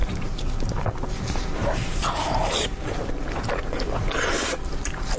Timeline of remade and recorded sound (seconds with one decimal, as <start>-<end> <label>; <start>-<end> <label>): 0.0-3.1 remade; 3.1-5.2 recorded